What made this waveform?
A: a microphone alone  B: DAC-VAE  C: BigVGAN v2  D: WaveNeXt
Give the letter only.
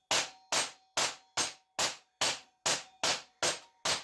A